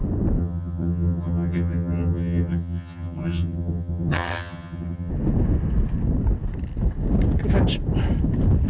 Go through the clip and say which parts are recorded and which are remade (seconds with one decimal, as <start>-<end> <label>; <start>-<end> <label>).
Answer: 0.0-0.4 recorded; 0.4-5.1 remade; 5.1-8.7 recorded